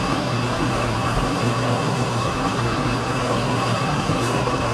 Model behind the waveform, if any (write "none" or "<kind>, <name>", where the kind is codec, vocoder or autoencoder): codec, SNAC